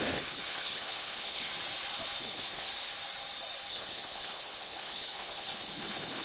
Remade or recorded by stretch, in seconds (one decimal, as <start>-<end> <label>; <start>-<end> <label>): 0.0-1.5 remade; 1.5-2.2 recorded; 2.2-2.7 remade; 2.7-3.7 recorded; 3.7-6.2 remade